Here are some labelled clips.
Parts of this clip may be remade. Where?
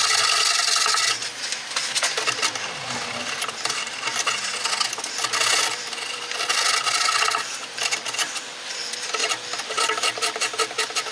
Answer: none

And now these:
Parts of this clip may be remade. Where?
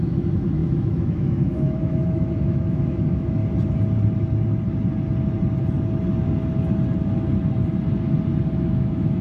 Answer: 0.0-3.4 (autoencoder, DAC-VAE); 8.5-9.2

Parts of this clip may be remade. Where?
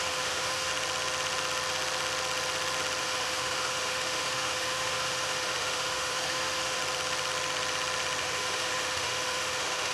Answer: 0.0-0.7 (autoencoder, DAC-VAE); 3.0-6.8; 8.2-9.9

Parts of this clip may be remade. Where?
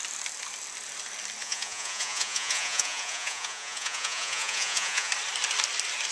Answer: 1.4-5.1 (vocoder, Vocos)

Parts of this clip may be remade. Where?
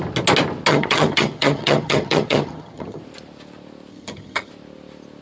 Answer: 0.7-3.0 (vocoder, HiFi-GAN); 3.9-4.5